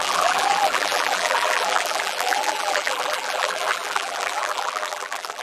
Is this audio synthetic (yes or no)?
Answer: yes